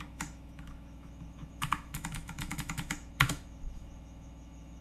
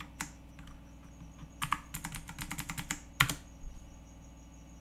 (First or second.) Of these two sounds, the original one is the second